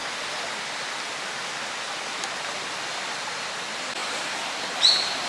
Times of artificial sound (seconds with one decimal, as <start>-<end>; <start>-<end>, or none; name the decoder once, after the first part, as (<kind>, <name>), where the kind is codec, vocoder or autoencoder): 3.1-5.3 (vocoder, BigVGAN v2)